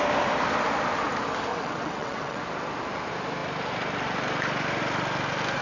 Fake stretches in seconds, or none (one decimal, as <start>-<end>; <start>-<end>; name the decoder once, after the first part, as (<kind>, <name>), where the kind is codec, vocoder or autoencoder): 1.5-2.4 (vocoder, WaveNeXt)